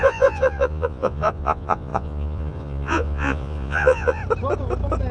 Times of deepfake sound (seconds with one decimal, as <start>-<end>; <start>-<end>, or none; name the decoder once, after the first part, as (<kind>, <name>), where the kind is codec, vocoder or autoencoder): 0.0-4.2 (vocoder, Vocos)